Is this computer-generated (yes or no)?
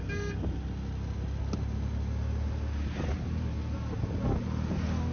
no